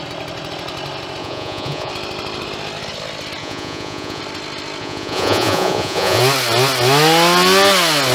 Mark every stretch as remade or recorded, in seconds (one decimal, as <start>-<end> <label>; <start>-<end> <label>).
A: 0.0-1.2 recorded; 1.2-1.9 remade; 1.9-3.4 recorded; 3.4-4.2 remade; 4.2-4.8 recorded; 4.8-6.2 remade; 6.2-8.1 recorded